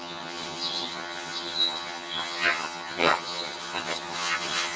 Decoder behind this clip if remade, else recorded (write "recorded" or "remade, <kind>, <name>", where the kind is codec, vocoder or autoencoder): remade, vocoder, HiFi-GAN